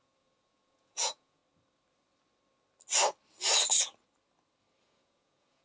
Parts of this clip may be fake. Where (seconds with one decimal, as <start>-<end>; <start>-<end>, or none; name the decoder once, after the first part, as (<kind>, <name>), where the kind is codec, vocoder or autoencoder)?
0.0-1.4 (vocoder, Vocos); 4.8-5.6